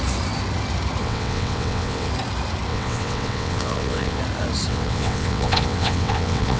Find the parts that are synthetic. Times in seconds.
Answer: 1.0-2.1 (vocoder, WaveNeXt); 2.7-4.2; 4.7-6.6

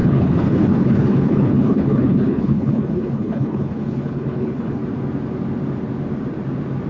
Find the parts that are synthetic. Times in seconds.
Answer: 0.0-4.8 (codec, HILCodec)

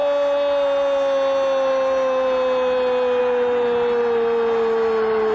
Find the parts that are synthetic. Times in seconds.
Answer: none

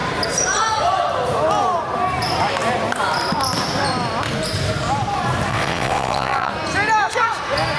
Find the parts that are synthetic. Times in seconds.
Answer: 5.5-6.5 (vocoder, WaveNeXt)

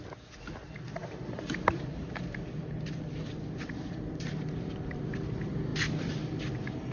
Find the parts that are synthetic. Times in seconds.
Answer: 1.0-5.1 (vocoder, BigVGAN v2); 5.7-6.5